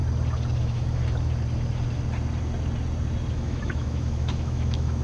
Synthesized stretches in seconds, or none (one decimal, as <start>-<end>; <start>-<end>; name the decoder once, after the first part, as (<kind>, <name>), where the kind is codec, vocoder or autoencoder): 0.6-1.0 (autoencoder, DAC-VAE); 3.3-5.0